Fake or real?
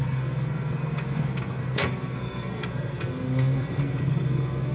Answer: fake